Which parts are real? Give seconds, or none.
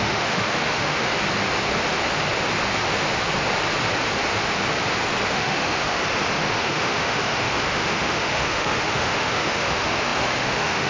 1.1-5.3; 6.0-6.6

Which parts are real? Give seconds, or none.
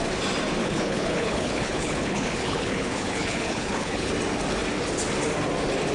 0.0-0.6; 4.1-5.9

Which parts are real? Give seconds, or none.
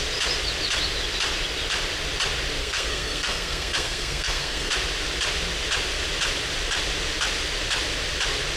0.0-2.6; 4.7-8.6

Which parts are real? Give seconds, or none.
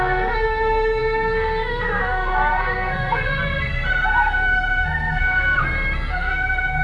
5.6-6.1